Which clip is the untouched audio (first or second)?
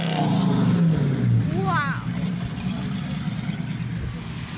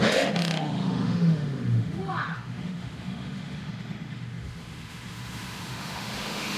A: first